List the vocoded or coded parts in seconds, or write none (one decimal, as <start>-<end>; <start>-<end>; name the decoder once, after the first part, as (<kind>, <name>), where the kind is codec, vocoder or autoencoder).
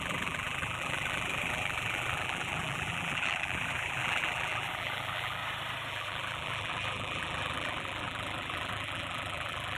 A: 0.0-5.4 (vocoder, BigVGAN v2); 5.9-9.8